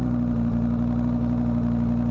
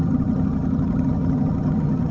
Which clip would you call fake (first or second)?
second